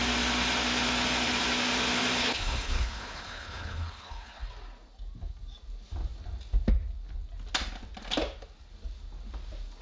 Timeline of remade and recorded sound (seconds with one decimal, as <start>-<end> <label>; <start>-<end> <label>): 0.0-2.2 recorded; 2.2-4.5 remade; 4.5-9.8 recorded